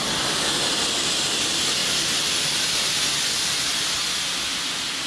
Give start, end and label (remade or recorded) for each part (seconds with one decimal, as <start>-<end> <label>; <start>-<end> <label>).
0.0-1.8 recorded; 1.8-5.1 remade